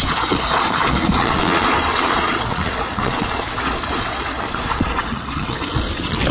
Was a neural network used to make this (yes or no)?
yes